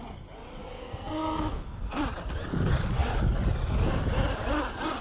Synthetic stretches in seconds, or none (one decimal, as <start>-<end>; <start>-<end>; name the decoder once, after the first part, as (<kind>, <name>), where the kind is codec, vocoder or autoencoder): 0.6-2.0 (codec, SNAC)